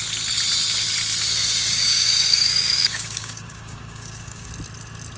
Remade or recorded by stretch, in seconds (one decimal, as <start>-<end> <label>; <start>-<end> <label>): 0.0-1.4 recorded; 1.4-4.5 remade; 4.5-5.2 recorded